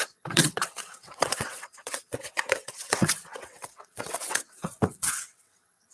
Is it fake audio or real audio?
fake